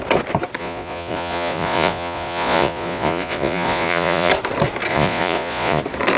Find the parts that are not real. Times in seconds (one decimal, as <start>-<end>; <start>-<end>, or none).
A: 0.6-4.3; 4.9-5.8